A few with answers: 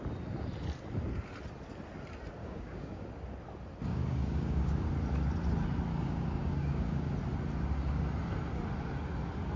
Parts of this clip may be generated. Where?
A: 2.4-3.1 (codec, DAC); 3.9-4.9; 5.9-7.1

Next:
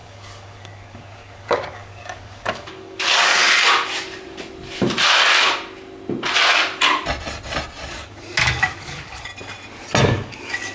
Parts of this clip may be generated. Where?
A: 0.0-3.4 (codec, DAC); 7.9-9.3; 10.0-10.7